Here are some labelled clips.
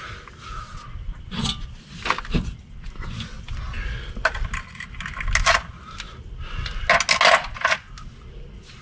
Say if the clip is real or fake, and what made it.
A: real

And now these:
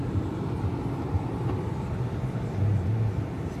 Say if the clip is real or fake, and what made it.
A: real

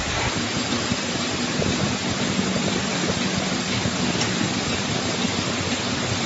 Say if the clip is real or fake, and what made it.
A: fake, vocoder, BigVGAN v2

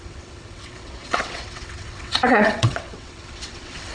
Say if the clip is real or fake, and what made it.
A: fake, vocoder, WaveNeXt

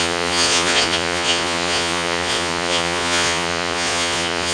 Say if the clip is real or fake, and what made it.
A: fake, vocoder, Vocos